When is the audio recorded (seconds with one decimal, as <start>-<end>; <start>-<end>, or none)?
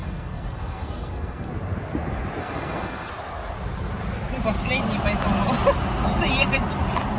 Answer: 1.5-2.4; 3.1-7.2